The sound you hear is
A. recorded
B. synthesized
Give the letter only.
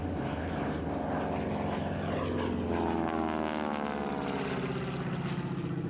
A